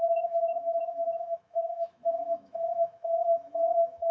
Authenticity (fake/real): fake